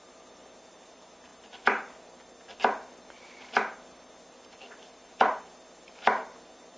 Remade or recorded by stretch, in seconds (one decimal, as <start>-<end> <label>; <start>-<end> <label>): 0.0-6.8 recorded